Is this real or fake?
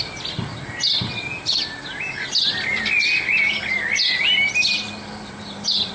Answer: real